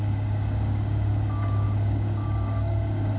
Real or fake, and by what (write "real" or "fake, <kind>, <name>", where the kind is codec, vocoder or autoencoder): fake, codec, DAC